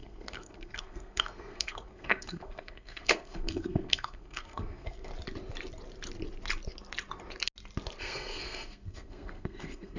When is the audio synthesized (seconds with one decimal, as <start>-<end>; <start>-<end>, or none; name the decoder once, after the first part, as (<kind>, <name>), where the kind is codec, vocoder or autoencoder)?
0.0-5.1 (codec, SNAC); 8.0-10.0

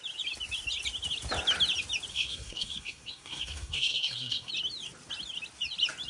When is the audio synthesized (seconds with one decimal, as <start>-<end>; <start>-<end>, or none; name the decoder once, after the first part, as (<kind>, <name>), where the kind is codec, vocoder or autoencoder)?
2.1-4.5 (codec, SNAC)

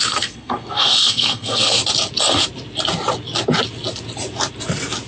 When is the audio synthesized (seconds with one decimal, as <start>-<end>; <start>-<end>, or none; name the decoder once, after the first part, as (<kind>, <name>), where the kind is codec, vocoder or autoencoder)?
0.0-1.8 (codec, SNAC)

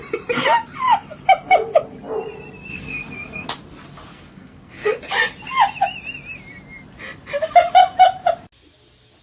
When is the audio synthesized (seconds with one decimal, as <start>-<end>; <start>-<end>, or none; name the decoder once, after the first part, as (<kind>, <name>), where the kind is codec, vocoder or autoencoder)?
2.7-3.5 (codec, SNAC); 4.1-5.0